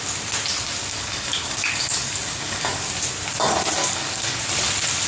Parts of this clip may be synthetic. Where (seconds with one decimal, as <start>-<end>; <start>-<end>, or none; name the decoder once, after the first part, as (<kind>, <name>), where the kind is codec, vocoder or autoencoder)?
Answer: 0.8-2.9 (codec, DAC); 3.8-4.4